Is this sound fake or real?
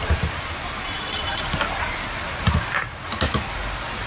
real